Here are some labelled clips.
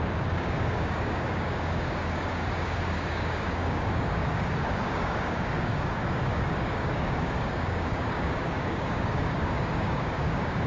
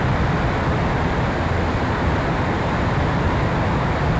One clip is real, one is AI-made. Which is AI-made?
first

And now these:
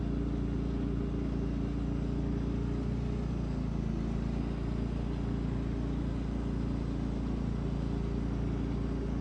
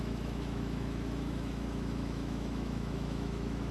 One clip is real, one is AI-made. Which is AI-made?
second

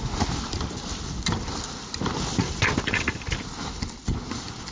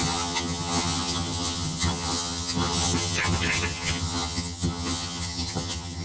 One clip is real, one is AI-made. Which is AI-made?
second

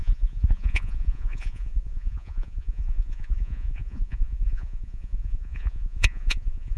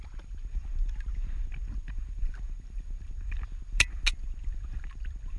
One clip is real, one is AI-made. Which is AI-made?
first